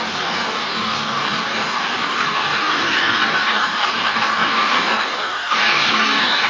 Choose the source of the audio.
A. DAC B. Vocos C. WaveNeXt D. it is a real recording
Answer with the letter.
A